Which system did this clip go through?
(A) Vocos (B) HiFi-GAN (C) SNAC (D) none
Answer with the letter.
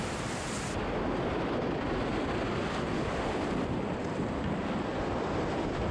D